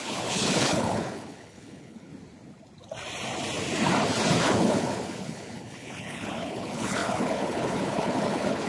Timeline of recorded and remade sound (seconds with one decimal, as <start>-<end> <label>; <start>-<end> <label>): 0.0-2.1 remade; 2.1-4.4 recorded; 4.4-8.7 remade